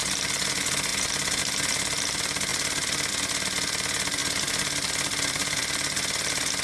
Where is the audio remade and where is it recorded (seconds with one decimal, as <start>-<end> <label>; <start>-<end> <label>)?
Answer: 0.0-6.6 recorded

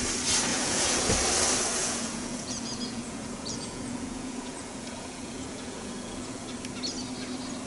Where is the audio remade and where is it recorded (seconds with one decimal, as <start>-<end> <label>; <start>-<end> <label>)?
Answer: 0.0-0.5 recorded; 0.5-1.1 remade; 1.1-1.8 recorded; 1.8-6.4 remade; 6.4-7.7 recorded

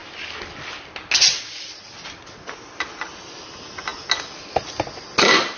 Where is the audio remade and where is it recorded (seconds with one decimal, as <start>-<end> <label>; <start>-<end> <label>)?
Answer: 0.0-5.6 recorded

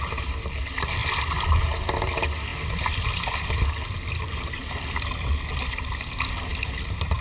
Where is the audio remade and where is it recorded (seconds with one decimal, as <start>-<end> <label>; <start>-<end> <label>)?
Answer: 0.0-7.2 recorded

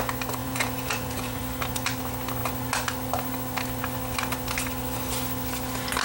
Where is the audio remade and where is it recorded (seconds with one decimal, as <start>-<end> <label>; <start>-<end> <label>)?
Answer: 0.0-0.4 recorded; 0.4-1.4 remade; 1.4-6.0 recorded